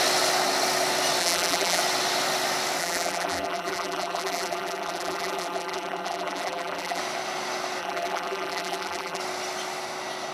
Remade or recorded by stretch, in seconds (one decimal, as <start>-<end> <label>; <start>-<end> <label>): 0.0-1.2 recorded; 1.2-1.8 remade; 1.8-2.8 recorded; 2.8-7.0 remade; 7.0-7.8 recorded; 7.8-9.2 remade; 9.2-10.3 recorded